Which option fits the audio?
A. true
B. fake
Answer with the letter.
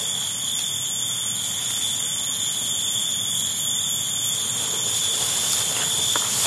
A